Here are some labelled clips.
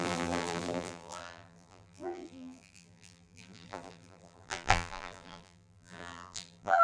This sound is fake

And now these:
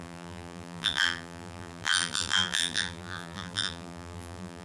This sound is fake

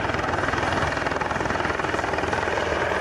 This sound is real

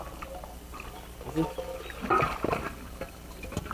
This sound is real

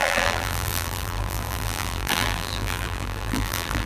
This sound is fake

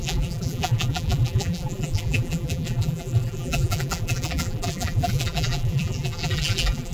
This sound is fake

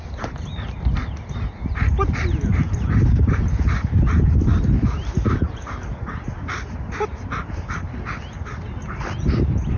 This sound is real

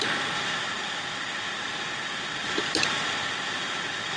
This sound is fake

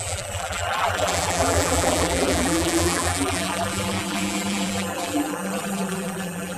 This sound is fake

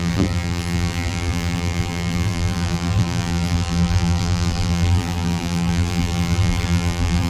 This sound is fake